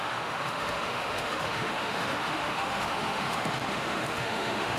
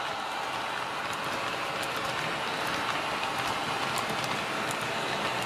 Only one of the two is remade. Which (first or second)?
first